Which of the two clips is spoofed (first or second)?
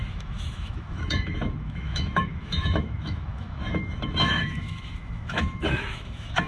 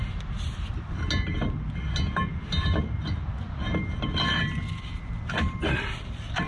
first